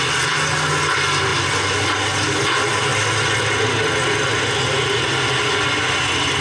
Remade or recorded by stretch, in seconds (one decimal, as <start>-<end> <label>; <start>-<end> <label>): 0.0-6.4 recorded